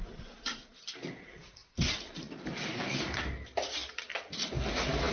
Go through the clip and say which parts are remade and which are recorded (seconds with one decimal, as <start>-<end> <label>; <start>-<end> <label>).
0.0-5.1 recorded